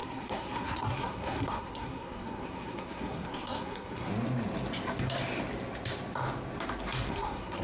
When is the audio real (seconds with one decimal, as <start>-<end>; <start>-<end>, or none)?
4.1-7.1